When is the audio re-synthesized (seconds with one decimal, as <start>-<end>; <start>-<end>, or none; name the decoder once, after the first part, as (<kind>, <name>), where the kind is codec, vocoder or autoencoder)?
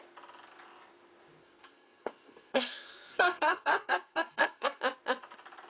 1.4-4.8 (codec, SNAC)